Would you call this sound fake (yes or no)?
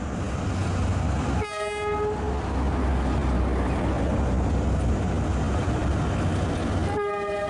no